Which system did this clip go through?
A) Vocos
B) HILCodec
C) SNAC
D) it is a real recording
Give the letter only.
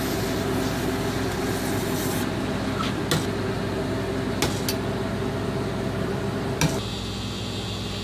D